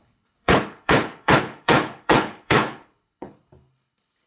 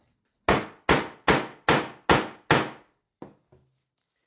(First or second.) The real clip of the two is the second